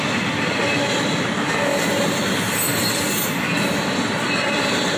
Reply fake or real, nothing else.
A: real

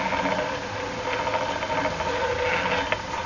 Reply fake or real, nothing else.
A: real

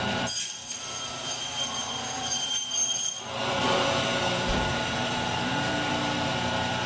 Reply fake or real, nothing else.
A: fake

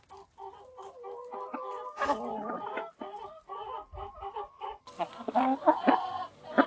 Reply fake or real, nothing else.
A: real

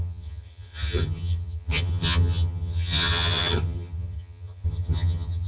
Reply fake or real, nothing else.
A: fake